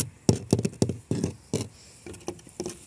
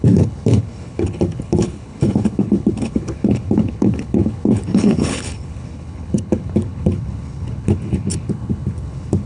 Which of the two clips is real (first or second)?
first